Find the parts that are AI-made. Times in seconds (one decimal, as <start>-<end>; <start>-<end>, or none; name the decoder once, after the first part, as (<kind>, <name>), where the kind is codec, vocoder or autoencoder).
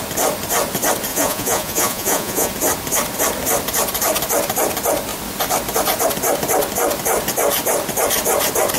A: 1.1-2.5 (vocoder, Vocos)